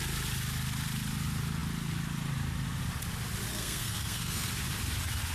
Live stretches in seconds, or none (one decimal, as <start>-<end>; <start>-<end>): 0.0-3.5; 4.5-5.3